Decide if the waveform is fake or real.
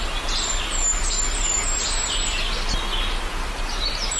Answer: real